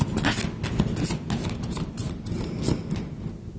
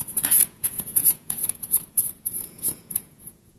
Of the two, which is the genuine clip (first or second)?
first